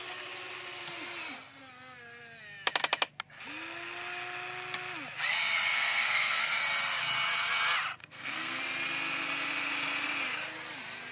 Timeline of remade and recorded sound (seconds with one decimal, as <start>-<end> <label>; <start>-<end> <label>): 0.0-5.7 recorded; 5.7-6.6 remade; 6.6-8.0 recorded; 8.0-8.6 remade; 8.6-11.1 recorded